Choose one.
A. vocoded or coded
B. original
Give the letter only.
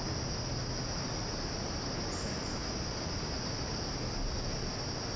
B